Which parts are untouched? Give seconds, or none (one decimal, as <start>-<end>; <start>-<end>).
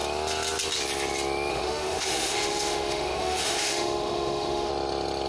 0.0-1.5; 4.7-5.3